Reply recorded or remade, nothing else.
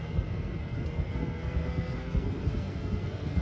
remade